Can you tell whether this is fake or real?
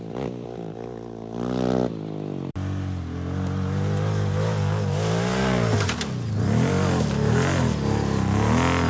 real